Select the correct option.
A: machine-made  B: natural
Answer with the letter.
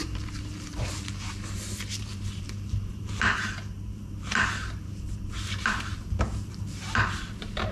A